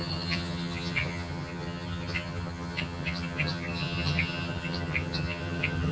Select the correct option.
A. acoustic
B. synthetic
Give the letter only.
B